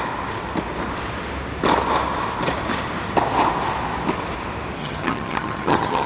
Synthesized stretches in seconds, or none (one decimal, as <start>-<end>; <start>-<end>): 4.8-6.1